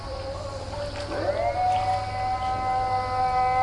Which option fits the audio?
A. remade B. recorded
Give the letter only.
B